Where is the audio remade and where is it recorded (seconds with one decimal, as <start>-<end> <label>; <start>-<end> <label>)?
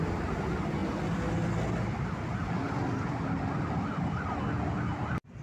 0.0-5.4 recorded